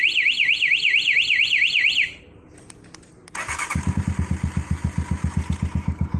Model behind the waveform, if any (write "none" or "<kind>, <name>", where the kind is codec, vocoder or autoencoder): none